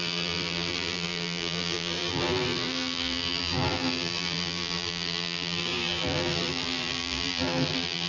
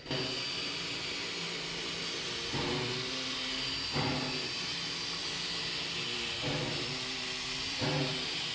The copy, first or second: first